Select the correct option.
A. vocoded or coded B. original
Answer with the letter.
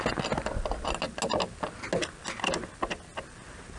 B